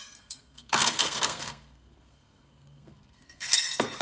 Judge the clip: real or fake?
fake